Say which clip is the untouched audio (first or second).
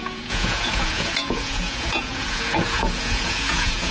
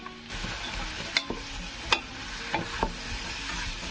second